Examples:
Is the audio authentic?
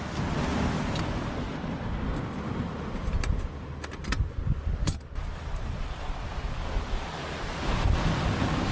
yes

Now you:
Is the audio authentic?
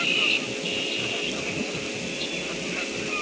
yes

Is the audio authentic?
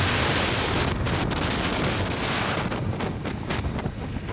yes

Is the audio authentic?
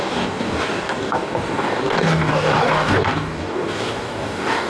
no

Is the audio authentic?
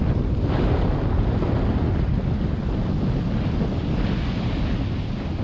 yes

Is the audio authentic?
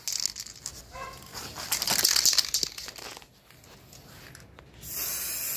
yes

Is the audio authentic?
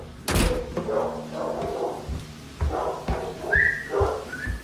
yes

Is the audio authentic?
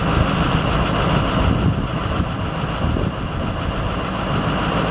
yes